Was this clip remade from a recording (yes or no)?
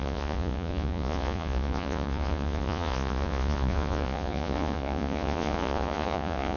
yes